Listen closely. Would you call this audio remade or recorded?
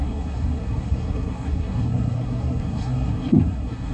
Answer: remade